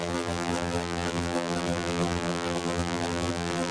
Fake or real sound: fake